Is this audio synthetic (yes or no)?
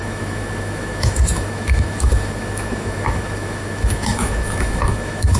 yes